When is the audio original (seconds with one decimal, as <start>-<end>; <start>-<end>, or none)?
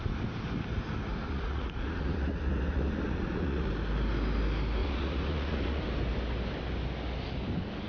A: 0.0-1.1; 3.7-4.8; 5.8-7.9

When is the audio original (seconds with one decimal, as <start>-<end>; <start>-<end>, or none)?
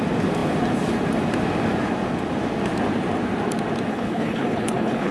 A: 0.0-3.9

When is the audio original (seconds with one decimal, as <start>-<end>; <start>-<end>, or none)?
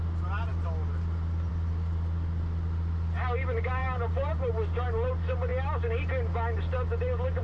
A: 0.0-3.8; 4.5-7.4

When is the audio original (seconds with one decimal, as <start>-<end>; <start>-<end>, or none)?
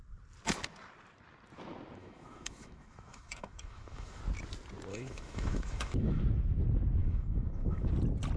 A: 0.0-2.0; 4.2-4.9; 6.2-7.0; 7.9-8.4